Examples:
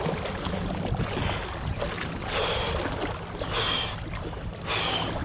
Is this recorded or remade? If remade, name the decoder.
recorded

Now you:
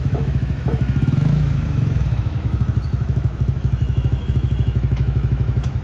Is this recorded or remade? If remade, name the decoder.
remade, autoencoder, DAC-VAE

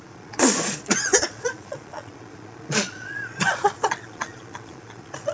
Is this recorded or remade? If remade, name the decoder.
remade, vocoder, Vocos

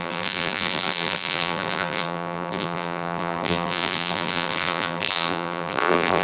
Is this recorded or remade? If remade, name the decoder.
remade, vocoder, BigVGAN v2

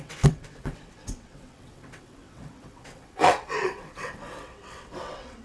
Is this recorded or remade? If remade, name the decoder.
remade, vocoder, WaveNeXt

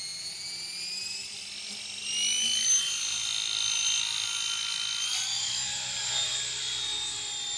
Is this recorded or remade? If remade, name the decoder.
recorded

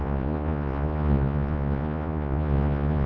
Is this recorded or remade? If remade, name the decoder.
remade, vocoder, Vocos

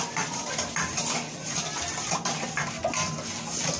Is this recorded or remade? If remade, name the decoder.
recorded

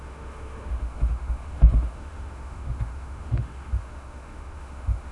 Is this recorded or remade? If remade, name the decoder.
remade, autoencoder, DAC-VAE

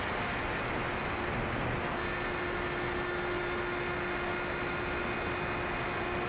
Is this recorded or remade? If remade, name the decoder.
recorded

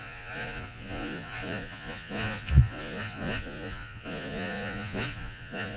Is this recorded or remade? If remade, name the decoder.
remade, vocoder, Vocos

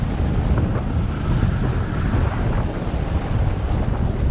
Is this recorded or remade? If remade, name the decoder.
recorded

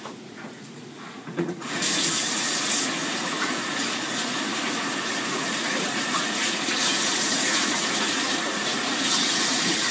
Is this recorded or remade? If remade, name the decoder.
remade, vocoder, Vocos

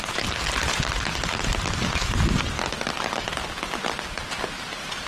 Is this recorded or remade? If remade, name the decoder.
recorded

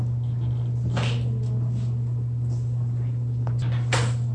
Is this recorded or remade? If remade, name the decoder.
recorded